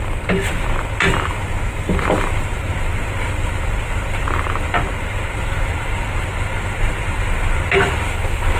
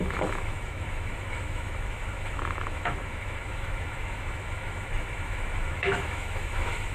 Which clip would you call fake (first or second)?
second